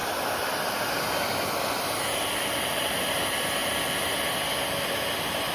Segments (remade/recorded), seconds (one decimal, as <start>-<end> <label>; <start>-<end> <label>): 0.0-5.5 recorded